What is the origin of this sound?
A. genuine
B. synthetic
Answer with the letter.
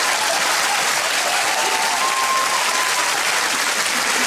A